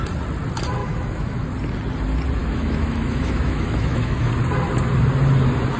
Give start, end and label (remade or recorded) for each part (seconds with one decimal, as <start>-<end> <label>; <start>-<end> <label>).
0.0-0.8 recorded; 0.8-1.5 remade; 1.5-2.4 recorded; 2.4-4.3 remade; 4.3-5.8 recorded